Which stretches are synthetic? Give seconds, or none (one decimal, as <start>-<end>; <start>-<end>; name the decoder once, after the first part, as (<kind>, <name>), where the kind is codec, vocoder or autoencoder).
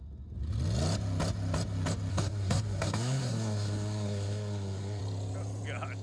2.1-5.0 (codec, SNAC)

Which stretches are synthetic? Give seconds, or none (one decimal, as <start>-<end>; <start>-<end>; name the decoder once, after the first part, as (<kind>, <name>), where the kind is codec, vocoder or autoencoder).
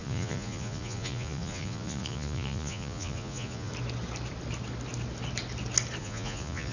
0.0-3.7 (vocoder, Vocos); 6.0-6.7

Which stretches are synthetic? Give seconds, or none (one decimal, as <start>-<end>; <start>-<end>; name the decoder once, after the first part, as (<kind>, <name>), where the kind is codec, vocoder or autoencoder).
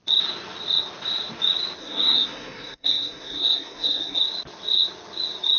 1.8-4.2 (codec, SNAC)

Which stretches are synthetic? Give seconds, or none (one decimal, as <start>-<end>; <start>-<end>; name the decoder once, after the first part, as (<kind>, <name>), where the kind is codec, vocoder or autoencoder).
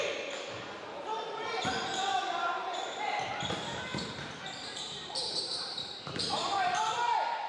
1.4-3.3 (vocoder, BigVGAN v2); 3.9-6.8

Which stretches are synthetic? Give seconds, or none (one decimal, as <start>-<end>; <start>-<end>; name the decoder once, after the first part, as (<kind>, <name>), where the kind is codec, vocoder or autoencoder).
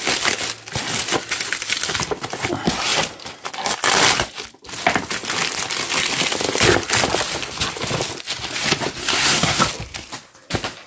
9.0-9.6 (codec, SNAC)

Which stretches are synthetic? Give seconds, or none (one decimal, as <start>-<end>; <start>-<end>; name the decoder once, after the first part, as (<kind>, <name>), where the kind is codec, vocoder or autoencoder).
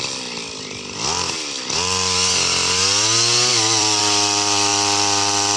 3.5-4.0 (vocoder, BigVGAN v2); 4.7-5.6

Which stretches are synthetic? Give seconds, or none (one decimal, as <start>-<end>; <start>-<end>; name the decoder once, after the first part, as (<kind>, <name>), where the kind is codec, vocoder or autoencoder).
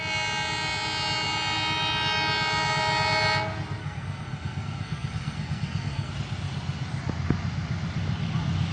3.8-6.1 (codec, SNAC)